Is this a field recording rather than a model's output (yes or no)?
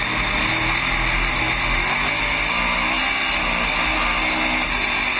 yes